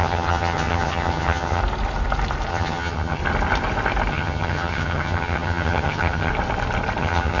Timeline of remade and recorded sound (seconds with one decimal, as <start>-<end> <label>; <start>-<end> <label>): 0.0-1.6 remade; 1.6-2.5 recorded; 2.5-3.2 remade; 3.2-4.1 recorded; 4.1-6.3 remade; 6.3-7.0 recorded; 7.0-7.4 remade